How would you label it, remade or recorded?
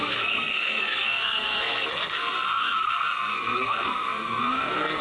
remade